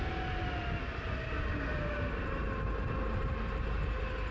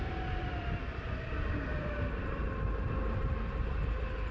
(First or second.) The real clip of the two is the first